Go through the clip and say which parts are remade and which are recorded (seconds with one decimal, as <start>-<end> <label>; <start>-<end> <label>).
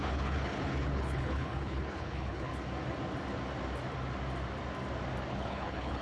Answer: 0.0-2.5 remade; 2.5-5.3 recorded; 5.3-6.0 remade